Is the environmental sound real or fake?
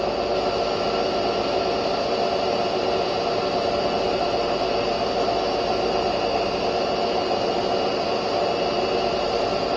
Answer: real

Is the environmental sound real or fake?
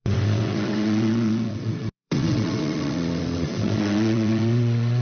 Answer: fake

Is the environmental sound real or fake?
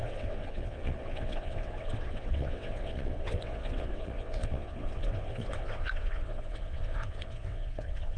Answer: fake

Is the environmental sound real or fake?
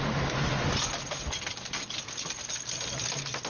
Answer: real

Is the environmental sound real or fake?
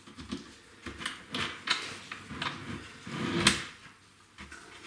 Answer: real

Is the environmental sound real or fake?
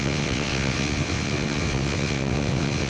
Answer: fake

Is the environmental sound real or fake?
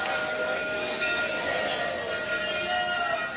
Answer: real